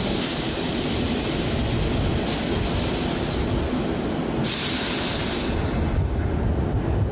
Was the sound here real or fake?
real